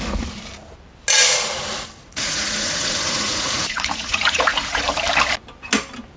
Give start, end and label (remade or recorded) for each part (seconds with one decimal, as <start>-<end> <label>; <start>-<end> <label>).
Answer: 0.0-2.0 recorded; 2.0-4.8 remade; 4.8-6.2 recorded